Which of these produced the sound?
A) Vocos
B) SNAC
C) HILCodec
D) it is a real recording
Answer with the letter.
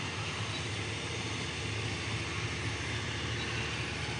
D